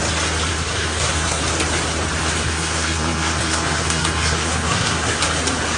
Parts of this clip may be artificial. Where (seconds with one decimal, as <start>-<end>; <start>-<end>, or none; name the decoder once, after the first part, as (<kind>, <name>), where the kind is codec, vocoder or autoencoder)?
0.5-1.4 (codec, SNAC); 2.2-5.2